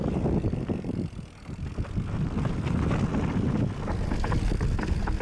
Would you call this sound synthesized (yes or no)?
no